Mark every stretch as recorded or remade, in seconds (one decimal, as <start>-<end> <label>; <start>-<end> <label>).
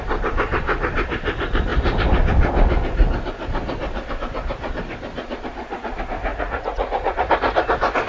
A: 0.0-6.3 recorded; 6.3-7.3 remade; 7.3-8.1 recorded